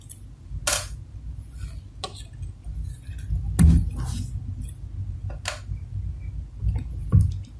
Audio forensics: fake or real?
real